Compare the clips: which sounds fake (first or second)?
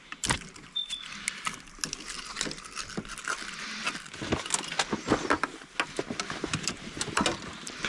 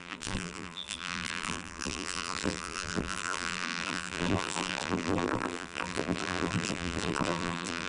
second